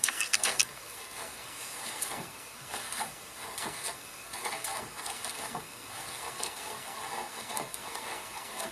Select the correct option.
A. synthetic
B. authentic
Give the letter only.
A